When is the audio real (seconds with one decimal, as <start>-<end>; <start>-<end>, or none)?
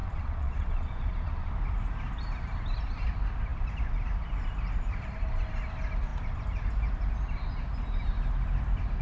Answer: 1.5-9.0